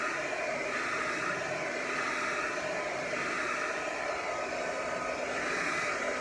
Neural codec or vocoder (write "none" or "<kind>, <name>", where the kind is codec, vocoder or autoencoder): vocoder, BigVGAN v2